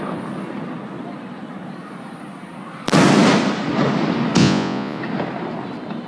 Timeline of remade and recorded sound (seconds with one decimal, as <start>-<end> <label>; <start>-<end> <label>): 0.0-4.4 recorded; 4.4-5.0 remade; 5.0-6.1 recorded